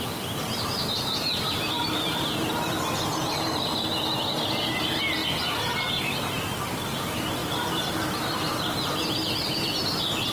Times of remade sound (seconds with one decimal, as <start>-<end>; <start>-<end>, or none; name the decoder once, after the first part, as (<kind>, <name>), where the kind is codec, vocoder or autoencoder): 7.4-9.0 (vocoder, BigVGAN v2)